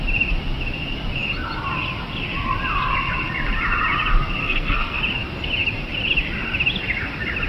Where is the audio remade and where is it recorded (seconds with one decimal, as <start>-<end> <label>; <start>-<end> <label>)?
0.0-4.4 recorded; 4.4-5.0 remade; 5.0-7.5 recorded